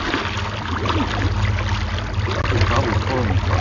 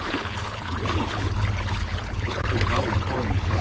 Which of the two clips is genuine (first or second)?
first